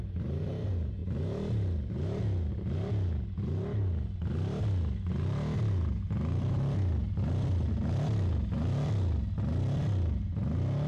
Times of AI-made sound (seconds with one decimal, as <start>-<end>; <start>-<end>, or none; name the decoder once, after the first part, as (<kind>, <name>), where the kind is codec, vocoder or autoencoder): none